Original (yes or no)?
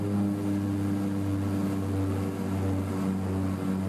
yes